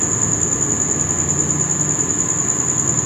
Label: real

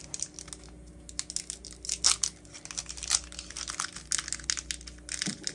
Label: real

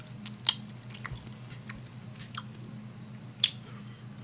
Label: real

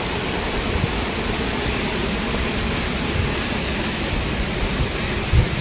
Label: real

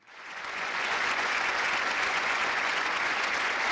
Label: fake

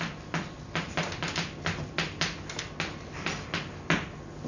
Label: real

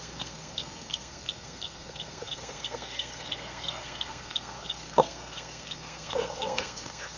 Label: fake